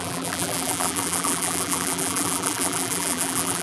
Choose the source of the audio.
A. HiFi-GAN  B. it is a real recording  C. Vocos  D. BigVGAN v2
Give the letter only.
D